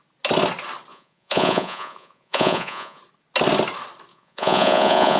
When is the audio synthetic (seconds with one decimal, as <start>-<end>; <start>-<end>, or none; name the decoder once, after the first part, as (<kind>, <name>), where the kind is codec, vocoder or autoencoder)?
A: 0.9-3.0 (vocoder, Vocos); 4.1-5.2